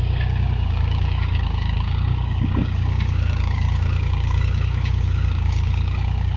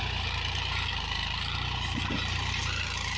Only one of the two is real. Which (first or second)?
second